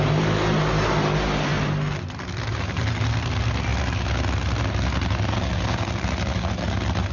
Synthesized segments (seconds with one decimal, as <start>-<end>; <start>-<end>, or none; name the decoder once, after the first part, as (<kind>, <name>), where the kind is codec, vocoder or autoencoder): none